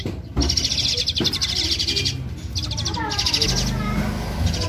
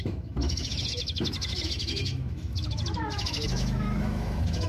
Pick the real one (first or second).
first